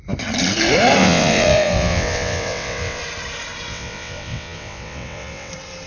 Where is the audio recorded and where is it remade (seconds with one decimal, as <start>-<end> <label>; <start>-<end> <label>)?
0.0-1.0 recorded; 1.0-3.0 remade; 3.0-3.7 recorded; 3.7-5.5 remade; 5.5-5.9 recorded

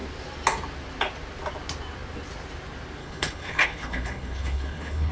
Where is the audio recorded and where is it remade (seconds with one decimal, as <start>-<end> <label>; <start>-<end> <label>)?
0.0-3.0 recorded; 3.0-5.1 remade

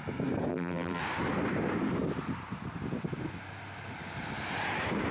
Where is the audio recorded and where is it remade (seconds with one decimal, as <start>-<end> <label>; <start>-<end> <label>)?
0.0-0.5 recorded; 0.5-1.0 remade; 1.0-5.1 recorded